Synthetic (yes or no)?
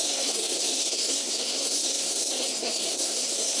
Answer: yes